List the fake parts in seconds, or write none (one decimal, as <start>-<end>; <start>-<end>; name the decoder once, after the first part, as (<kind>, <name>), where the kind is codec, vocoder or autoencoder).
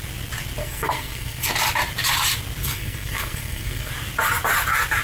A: 0.6-1.5 (codec, SNAC); 2.6-3.9